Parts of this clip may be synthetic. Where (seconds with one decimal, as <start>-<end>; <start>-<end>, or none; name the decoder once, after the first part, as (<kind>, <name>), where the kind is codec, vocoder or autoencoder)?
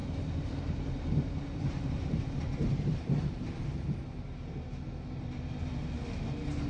0.0-4.0 (vocoder, BigVGAN v2)